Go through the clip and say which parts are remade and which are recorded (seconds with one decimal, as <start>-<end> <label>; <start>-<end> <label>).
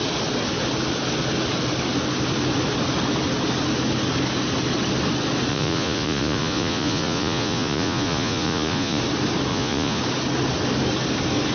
0.0-5.5 recorded; 5.5-9.0 remade; 9.0-9.5 recorded; 9.5-10.0 remade; 10.0-11.5 recorded